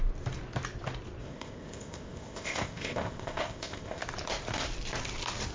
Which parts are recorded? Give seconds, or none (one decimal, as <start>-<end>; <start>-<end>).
0.0-1.2; 4.0-5.5